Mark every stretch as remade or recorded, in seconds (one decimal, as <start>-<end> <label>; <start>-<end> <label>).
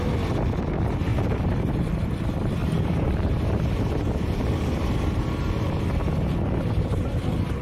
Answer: 0.0-1.1 recorded; 1.1-1.8 remade; 1.8-2.6 recorded; 2.6-5.8 remade; 5.8-7.6 recorded